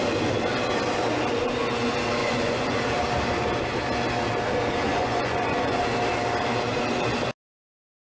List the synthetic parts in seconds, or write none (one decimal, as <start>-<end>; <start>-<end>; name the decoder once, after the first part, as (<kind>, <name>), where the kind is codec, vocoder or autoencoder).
2.2-2.8 (vocoder, Vocos); 4.9-5.8